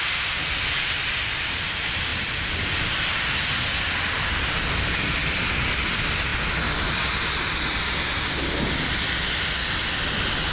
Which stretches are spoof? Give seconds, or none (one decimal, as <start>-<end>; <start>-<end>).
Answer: none